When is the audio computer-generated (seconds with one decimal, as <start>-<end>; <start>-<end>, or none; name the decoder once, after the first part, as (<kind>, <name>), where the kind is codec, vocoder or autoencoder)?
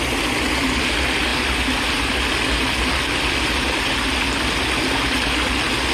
none